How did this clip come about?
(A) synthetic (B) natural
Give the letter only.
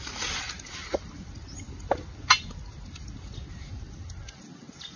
B